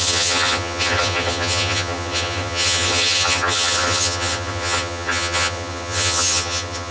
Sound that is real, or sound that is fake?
fake